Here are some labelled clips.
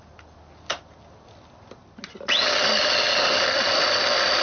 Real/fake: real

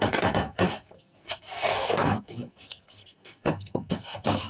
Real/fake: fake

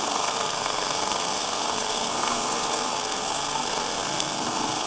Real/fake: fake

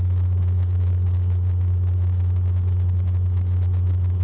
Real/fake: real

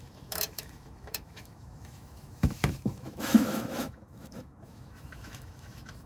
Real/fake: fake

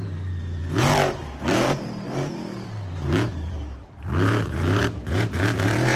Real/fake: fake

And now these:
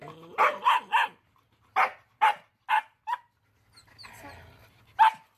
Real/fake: real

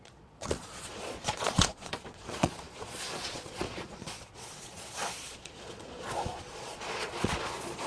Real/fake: fake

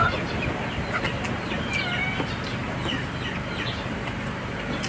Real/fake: real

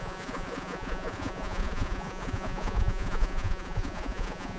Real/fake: fake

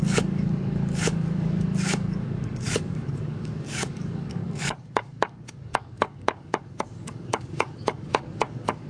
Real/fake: fake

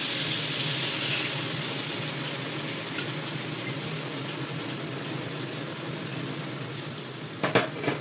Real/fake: real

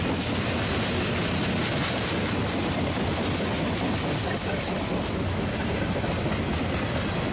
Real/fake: real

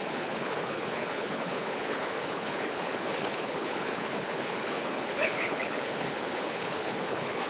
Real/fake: fake